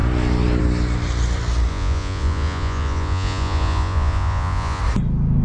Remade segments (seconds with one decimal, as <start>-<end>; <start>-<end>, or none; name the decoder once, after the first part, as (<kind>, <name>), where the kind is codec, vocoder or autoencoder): 1.7-4.8 (vocoder, Vocos)